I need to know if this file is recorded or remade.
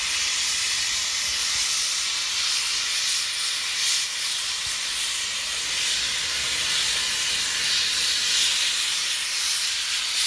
recorded